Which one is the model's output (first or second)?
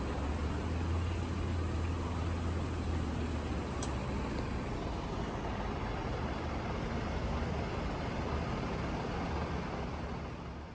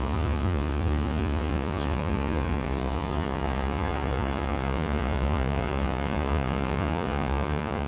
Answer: second